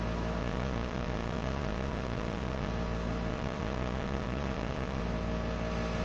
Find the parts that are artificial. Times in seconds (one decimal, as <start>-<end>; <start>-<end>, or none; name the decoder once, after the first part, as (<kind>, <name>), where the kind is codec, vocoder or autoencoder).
0.4-2.7 (vocoder, Vocos); 3.3-5.0